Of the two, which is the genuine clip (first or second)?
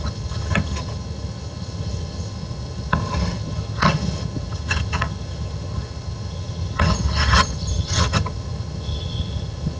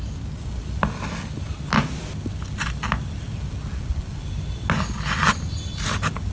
second